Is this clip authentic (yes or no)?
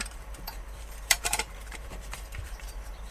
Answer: no